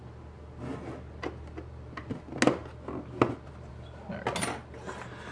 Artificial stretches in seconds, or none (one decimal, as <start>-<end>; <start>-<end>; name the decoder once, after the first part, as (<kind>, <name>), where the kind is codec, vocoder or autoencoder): none